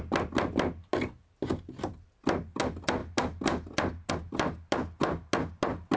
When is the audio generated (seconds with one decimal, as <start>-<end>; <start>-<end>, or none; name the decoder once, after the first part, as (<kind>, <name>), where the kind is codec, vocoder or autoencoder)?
none